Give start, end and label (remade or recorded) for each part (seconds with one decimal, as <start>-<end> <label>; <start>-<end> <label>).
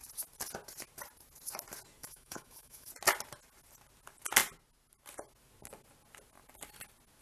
0.0-2.0 recorded; 2.0-2.9 remade; 2.9-7.2 recorded